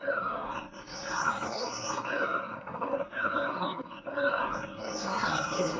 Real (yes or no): no